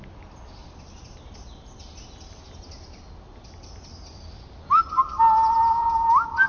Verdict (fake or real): real